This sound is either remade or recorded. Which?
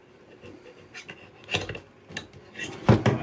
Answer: recorded